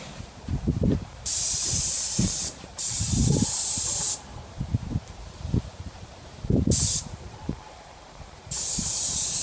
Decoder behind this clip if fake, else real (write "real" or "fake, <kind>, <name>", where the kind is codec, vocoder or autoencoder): fake, vocoder, BigVGAN v2